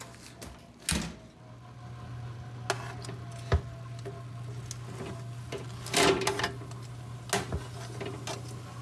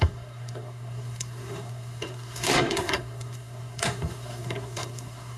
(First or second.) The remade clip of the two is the second